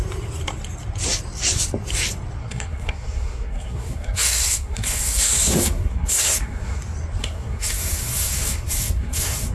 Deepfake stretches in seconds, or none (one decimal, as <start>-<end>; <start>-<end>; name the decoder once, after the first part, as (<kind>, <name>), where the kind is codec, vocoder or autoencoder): 2.4-6.8 (codec, SNAC); 7.2-9.5